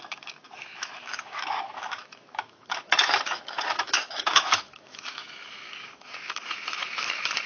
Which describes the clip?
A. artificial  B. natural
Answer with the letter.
A